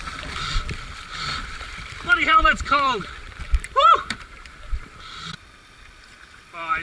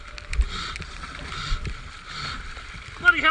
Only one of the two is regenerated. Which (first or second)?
first